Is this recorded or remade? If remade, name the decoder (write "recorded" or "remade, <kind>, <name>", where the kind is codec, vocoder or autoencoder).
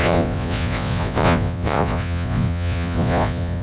remade, vocoder, Vocos